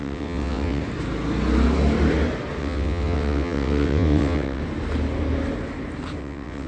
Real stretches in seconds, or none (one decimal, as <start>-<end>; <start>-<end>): 0.8-2.6; 4.6-6.2